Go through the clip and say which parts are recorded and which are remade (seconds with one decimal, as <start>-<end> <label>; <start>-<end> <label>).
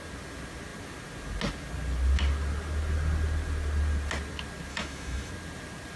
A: 0.0-4.7 recorded; 4.7-5.3 remade; 5.3-6.0 recorded